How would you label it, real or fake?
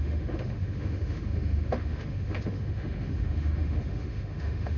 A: fake